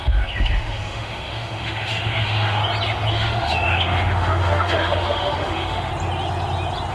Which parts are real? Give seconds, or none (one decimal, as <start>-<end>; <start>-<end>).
2.6-3.1; 5.9-6.9